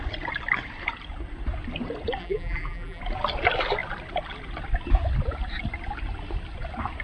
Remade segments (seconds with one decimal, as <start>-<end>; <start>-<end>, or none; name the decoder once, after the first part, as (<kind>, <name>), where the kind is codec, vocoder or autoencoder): 2.2-3.0 (vocoder, BigVGAN v2)